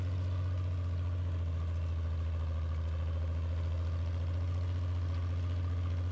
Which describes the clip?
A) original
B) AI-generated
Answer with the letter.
A